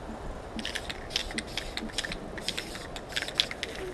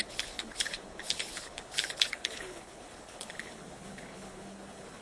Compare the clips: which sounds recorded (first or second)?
first